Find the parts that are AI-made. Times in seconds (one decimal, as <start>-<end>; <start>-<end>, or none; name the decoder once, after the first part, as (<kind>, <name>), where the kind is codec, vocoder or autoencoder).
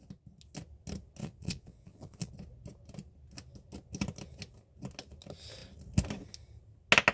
1.2-2.3 (vocoder, Vocos)